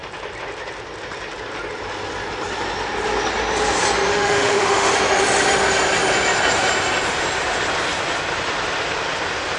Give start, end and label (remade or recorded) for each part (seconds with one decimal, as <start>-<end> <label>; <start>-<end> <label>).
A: 0.0-4.1 recorded; 4.1-4.9 remade; 4.9-9.6 recorded